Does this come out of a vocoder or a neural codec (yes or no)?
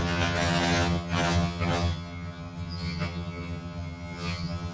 yes